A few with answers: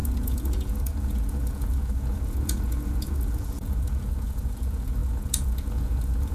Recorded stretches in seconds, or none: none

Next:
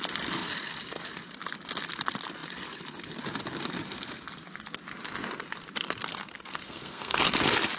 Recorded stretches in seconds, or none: 0.0-6.1; 7.2-7.8

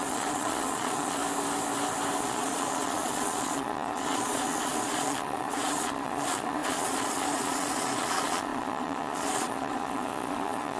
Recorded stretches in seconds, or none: 1.2-2.2